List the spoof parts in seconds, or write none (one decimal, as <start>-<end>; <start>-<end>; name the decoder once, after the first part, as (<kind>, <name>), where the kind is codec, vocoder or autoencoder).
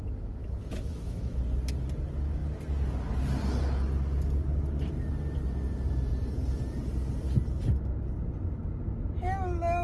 0.4-1.4 (autoencoder, DAC-VAE)